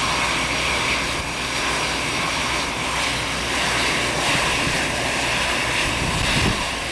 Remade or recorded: recorded